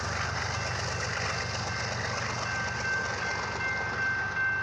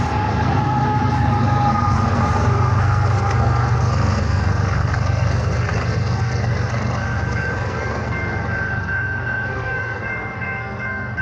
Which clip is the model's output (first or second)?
second